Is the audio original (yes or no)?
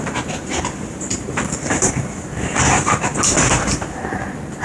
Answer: no